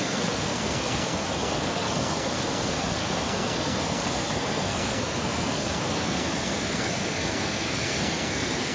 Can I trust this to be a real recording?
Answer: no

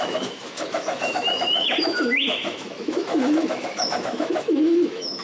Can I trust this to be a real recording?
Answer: no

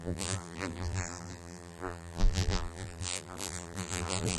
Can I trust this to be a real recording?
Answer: no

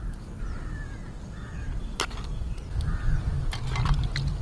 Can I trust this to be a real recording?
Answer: yes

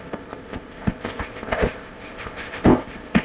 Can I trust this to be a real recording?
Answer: no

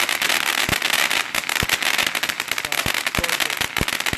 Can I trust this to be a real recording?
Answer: yes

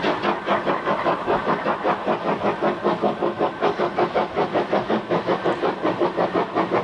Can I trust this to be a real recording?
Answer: yes